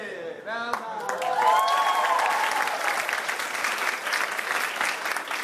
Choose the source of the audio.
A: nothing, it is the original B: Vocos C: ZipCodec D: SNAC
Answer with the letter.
A